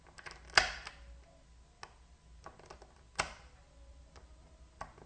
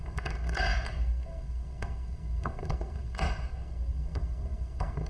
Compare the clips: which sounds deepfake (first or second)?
second